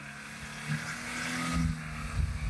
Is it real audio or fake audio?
real